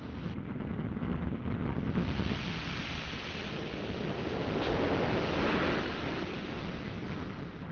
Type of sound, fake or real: real